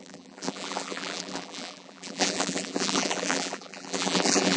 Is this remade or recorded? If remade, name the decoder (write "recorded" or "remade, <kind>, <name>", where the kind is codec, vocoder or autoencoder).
remade, vocoder, BigVGAN v2